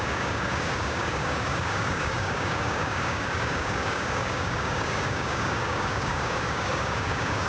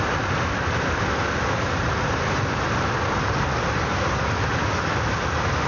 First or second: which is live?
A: second